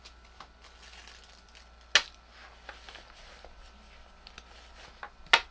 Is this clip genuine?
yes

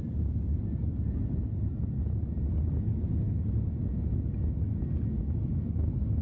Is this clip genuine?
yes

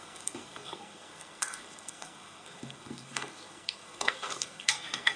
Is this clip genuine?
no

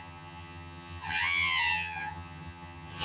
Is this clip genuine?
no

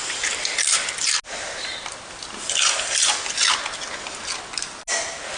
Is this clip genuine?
yes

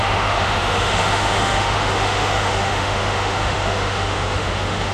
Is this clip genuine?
no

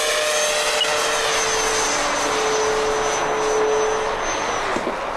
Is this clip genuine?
yes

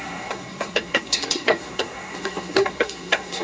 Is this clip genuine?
no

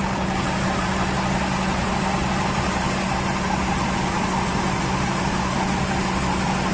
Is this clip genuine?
yes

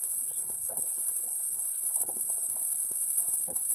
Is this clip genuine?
no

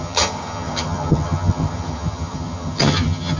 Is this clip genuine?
no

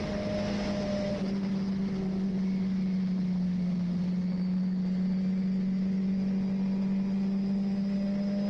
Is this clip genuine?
yes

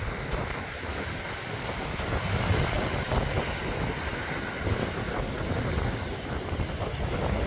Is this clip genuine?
yes